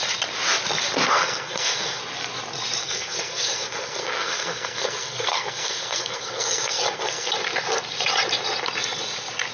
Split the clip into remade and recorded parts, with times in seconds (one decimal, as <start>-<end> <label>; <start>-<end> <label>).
0.0-1.1 recorded; 1.1-2.0 remade; 2.0-2.8 recorded; 2.8-7.3 remade; 7.3-9.5 recorded